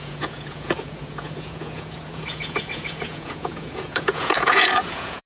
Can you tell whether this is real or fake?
fake